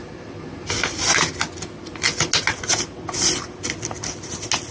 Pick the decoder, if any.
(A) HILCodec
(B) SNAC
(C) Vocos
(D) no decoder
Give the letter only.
D